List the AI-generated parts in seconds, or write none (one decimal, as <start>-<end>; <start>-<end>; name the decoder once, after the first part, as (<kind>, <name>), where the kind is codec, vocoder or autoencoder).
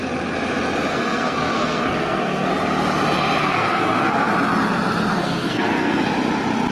0.9-2.5 (codec, SNAC); 3.4-4.3; 5.1-6.1